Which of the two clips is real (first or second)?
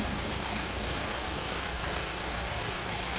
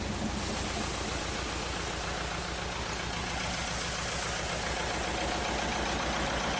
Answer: second